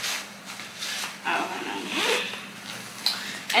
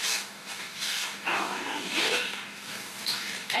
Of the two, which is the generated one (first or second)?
second